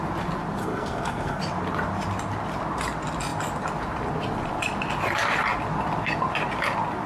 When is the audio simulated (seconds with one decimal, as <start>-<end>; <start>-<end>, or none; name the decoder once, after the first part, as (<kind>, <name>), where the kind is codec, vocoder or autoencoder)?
0.6-1.4 (codec, SNAC)